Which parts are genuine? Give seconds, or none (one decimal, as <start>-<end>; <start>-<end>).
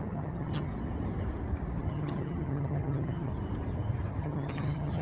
0.7-1.8; 3.3-4.2